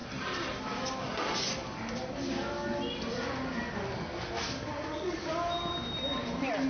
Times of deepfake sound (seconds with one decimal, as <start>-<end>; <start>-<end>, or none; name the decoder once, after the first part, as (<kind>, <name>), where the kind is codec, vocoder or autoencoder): 4.7-5.3 (vocoder, Vocos)